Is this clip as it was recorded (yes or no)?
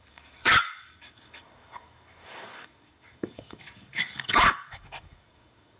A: no